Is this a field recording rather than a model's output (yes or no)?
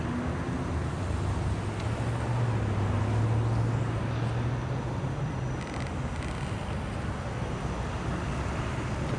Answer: yes